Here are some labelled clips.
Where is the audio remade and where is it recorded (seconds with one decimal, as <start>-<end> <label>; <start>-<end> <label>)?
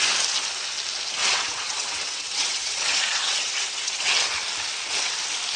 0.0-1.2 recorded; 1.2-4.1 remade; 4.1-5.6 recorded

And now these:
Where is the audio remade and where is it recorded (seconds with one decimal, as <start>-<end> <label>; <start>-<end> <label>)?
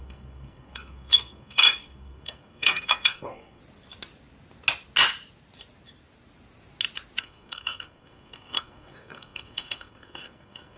0.0-3.6 remade; 3.6-7.2 recorded; 7.2-10.8 remade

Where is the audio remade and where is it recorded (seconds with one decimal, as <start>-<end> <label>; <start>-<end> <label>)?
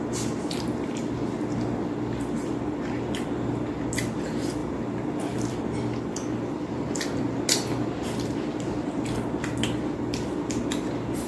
0.0-11.3 recorded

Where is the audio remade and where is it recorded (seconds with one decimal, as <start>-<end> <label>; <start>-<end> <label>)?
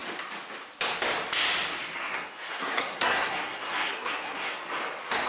0.0-2.0 recorded; 2.0-4.5 remade; 4.5-5.3 recorded